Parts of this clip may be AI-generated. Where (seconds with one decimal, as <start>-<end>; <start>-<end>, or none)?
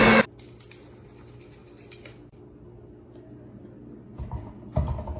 none